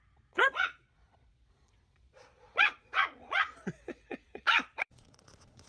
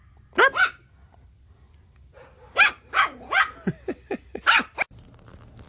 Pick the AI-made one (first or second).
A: first